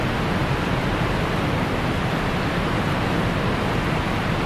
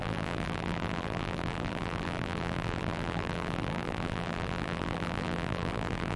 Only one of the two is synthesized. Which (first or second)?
second